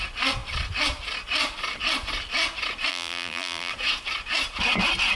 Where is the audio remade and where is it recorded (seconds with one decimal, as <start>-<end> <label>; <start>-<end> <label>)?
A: 0.0-2.9 recorded; 2.9-3.7 remade; 3.7-5.2 recorded